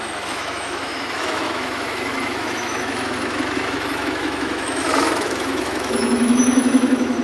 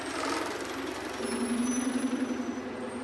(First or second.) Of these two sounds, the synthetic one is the first